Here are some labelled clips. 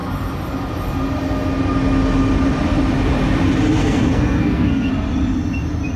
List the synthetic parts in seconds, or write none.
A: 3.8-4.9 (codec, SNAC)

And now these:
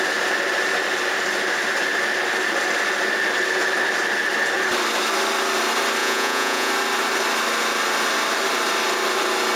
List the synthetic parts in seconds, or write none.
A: 6.0-6.7 (vocoder, Vocos)

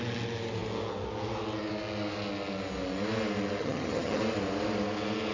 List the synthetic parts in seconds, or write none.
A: 3.6-4.2 (vocoder, HiFi-GAN)